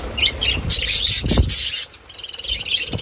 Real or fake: real